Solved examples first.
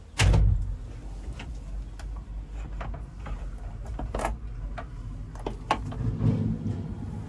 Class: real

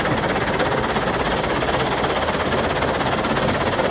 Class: real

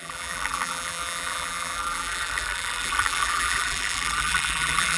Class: fake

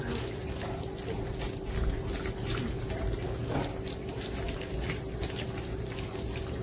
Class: real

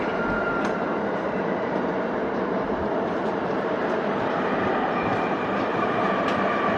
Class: fake